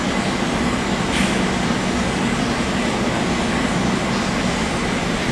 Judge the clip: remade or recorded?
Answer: recorded